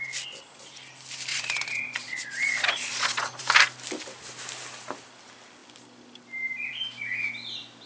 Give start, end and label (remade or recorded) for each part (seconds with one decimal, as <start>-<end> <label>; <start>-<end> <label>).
0.0-1.3 recorded; 1.3-3.4 remade; 3.4-7.9 recorded